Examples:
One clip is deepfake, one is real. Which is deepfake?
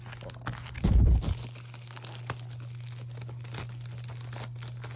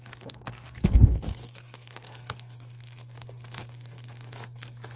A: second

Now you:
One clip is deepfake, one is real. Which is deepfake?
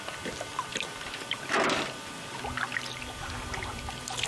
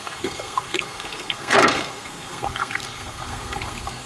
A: second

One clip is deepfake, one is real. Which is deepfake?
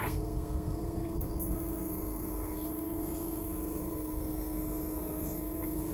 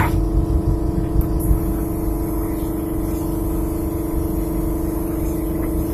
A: first